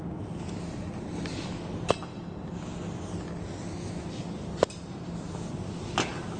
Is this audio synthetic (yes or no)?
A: no